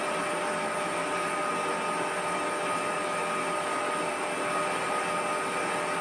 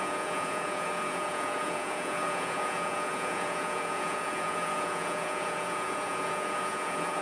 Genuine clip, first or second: first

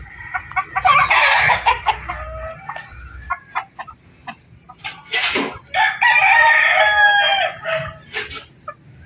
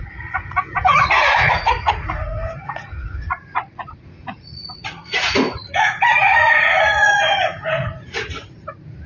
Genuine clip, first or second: first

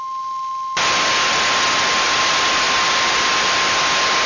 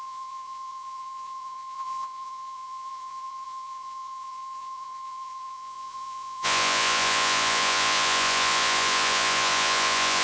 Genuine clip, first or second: first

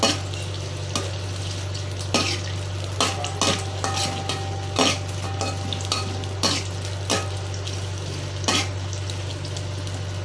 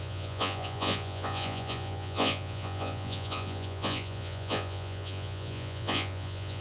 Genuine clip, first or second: first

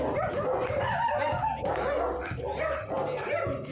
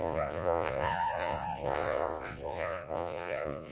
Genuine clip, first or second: first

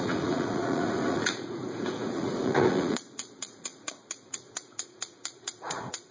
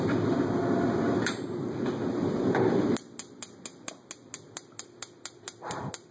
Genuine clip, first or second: second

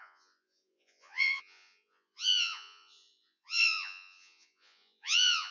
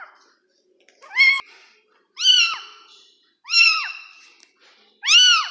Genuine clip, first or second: second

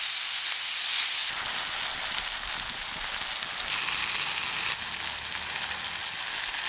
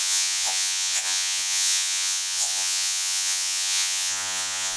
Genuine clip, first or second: first